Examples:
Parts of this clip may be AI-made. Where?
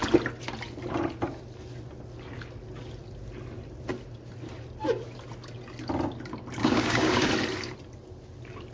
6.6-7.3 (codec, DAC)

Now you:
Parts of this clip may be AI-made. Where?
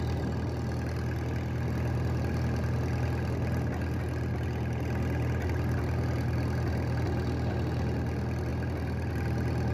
none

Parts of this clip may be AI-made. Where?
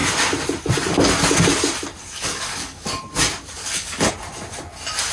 2.0-3.0 (codec, DAC); 3.6-4.1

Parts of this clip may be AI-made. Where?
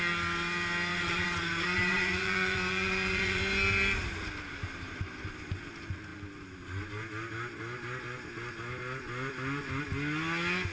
0.9-3.4 (vocoder, Vocos)